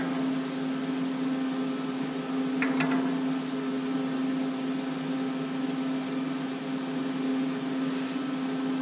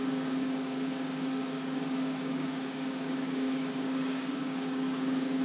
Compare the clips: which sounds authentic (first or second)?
first